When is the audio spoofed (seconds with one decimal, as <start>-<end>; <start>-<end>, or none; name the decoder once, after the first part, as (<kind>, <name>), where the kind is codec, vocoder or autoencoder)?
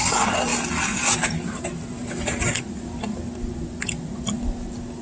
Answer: none